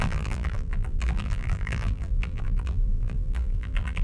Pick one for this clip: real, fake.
fake